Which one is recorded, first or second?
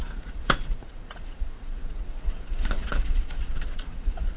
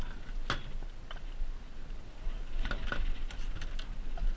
second